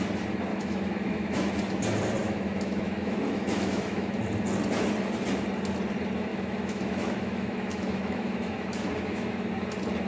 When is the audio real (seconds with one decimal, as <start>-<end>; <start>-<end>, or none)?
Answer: 0.0-0.5; 1.5-2.2; 4.2-6.3; 9.5-10.1